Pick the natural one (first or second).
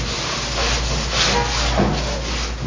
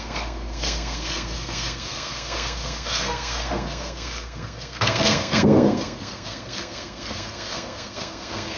first